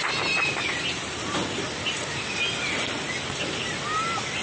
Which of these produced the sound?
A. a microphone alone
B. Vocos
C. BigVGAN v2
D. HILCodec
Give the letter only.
A